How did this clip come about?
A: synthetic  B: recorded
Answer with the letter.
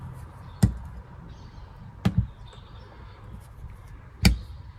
B